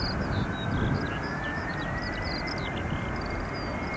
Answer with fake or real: real